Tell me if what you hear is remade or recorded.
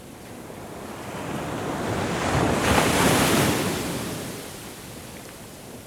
recorded